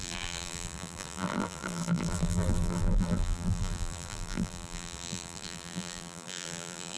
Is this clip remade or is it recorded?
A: remade